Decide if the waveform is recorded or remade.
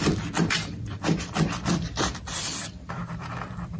remade